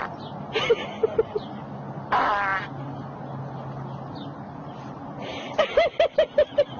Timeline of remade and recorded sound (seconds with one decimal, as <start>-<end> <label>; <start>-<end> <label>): 0.0-6.8 recorded